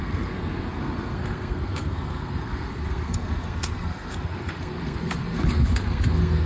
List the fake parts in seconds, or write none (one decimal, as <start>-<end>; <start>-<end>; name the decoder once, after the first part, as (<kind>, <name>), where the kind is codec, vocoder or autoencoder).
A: 0.0-6.5 (codec, SNAC)